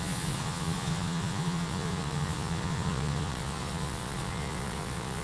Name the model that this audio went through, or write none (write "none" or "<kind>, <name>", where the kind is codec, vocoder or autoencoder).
vocoder, Vocos